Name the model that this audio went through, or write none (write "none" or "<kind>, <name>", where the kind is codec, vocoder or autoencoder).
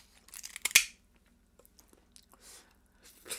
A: none